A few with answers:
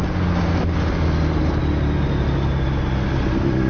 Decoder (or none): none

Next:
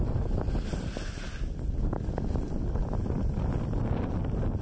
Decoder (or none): none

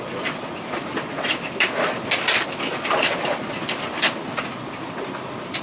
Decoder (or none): none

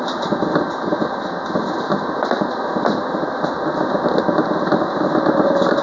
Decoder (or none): none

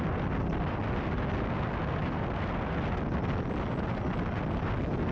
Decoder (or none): none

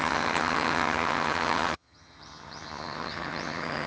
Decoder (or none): vocoder, HiFi-GAN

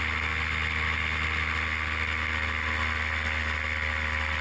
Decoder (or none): none